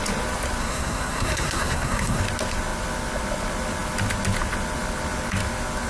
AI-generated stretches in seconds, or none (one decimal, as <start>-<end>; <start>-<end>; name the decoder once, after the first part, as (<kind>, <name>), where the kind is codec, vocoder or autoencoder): 0.6-2.2 (codec, SNAC)